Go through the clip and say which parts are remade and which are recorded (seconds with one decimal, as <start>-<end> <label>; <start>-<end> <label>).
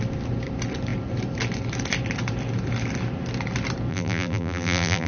0.0-3.9 recorded; 3.9-5.1 remade